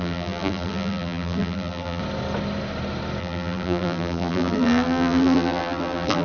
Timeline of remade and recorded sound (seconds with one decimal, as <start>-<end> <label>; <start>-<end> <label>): 0.0-2.0 remade; 2.0-3.2 recorded; 3.2-6.2 remade